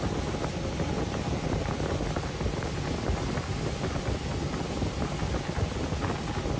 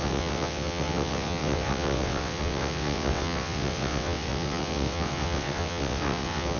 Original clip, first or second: first